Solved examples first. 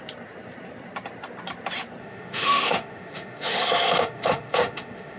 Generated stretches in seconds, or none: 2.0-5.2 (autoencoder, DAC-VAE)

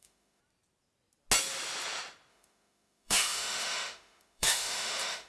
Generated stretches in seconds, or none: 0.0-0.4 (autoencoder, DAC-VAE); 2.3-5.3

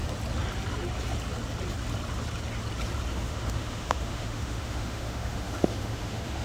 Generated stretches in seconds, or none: 3.1-6.4 (autoencoder, DAC-VAE)